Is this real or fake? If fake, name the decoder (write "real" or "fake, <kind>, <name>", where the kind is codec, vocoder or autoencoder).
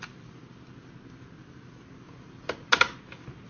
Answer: real